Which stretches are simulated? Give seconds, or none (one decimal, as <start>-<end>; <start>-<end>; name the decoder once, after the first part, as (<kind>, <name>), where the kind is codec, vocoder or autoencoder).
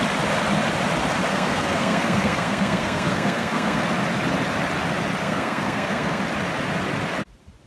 1.3-3.8 (codec, SNAC); 5.2-6.2